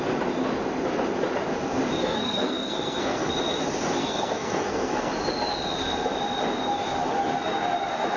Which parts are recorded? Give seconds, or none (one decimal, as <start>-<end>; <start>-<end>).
0.0-2.0; 3.3-4.0; 5.1-8.2